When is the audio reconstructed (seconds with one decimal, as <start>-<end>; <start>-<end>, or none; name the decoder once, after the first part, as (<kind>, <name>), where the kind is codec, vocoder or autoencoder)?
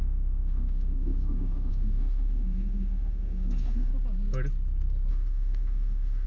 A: 0.0-3.9 (autoencoder, DAC-VAE); 5.1-6.3